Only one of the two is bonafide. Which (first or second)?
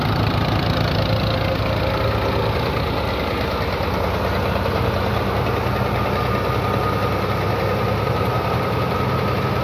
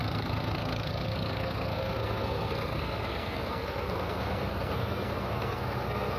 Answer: first